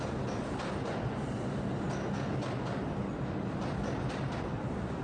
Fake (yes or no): no